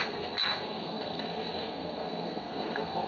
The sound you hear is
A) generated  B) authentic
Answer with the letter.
A